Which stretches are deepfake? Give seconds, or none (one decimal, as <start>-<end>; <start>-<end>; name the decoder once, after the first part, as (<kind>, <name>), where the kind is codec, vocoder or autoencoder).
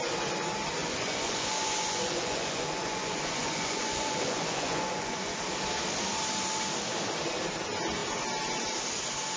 0.8-5.4 (vocoder, Vocos)